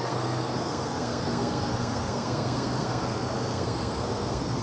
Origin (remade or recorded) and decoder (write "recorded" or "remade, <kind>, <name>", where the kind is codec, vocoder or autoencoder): remade, codec, SNAC